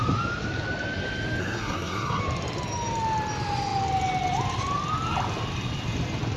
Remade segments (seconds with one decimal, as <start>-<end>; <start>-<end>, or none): 1.4-2.2